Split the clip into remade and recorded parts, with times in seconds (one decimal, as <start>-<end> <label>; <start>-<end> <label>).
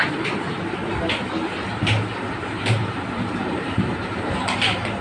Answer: 0.0-0.8 remade; 0.8-2.3 recorded; 2.3-5.0 remade